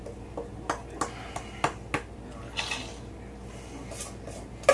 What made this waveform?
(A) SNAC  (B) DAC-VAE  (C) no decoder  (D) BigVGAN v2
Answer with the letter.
C